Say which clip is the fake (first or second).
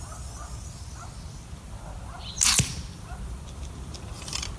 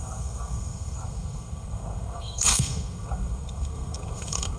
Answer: second